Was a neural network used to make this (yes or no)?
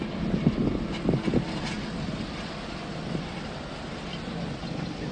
no